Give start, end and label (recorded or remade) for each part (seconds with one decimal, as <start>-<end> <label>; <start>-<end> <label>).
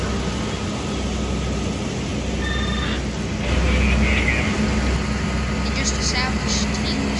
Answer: 0.0-7.2 recorded